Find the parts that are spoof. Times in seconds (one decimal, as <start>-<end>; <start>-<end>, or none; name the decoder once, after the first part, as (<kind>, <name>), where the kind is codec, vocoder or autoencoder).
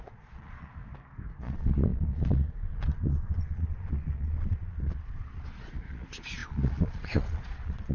0.0-0.8 (vocoder, Vocos); 1.4-7.9